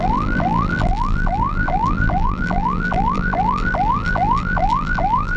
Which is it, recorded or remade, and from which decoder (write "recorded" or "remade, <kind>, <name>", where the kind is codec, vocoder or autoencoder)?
remade, vocoder, BigVGAN v2